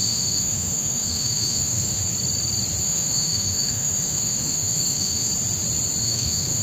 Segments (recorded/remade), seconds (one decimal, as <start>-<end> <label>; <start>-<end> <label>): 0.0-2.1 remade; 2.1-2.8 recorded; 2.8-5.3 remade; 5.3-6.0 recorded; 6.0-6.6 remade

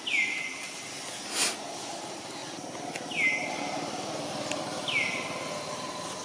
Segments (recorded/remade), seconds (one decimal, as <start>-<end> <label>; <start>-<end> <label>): 0.0-6.2 recorded

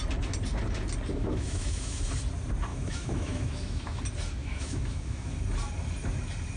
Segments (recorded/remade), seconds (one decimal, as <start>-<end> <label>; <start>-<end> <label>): 0.0-1.2 recorded; 1.2-2.0 remade; 2.0-2.7 recorded; 2.7-4.0 remade; 4.0-4.4 recorded; 4.4-5.3 remade; 5.3-6.6 recorded